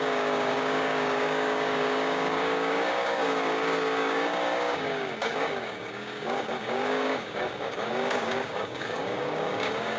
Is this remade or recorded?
remade